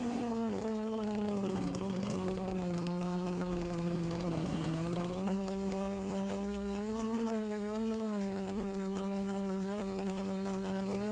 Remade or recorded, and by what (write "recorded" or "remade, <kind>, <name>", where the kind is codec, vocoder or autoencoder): remade, codec, SNAC